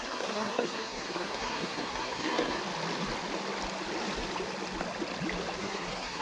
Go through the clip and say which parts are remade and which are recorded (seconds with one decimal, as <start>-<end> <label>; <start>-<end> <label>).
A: 0.0-2.6 remade; 2.6-5.6 recorded; 5.6-6.2 remade